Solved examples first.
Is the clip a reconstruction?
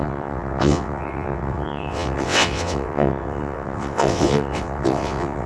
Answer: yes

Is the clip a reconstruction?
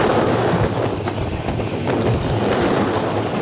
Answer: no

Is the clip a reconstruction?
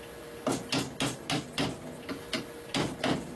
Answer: no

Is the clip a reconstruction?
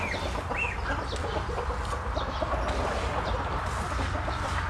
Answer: no